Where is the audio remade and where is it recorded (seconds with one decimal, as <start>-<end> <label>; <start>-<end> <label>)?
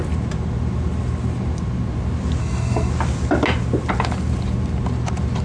0.0-2.4 recorded; 2.4-2.9 remade; 2.9-5.4 recorded